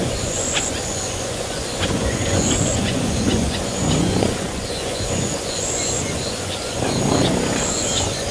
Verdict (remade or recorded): remade